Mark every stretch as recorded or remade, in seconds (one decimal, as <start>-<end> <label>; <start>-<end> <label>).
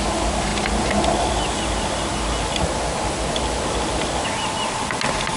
0.0-5.4 recorded